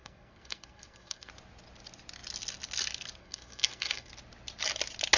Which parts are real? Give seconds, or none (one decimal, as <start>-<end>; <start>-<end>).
1.3-3.2; 4.1-5.2